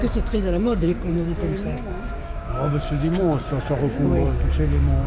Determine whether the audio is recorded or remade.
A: remade